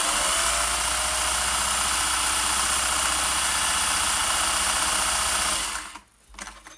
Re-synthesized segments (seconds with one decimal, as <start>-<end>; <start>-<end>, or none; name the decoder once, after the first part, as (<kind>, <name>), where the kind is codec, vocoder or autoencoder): none